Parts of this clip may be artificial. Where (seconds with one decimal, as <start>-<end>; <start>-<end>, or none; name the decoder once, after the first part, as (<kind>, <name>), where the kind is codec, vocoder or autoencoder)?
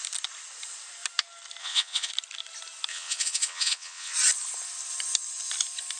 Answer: 1.6-2.1 (vocoder, WaveNeXt); 2.9-4.1